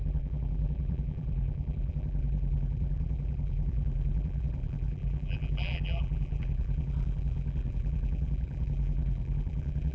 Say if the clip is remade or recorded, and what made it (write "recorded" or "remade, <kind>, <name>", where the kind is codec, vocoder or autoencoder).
remade, vocoder, BigVGAN v2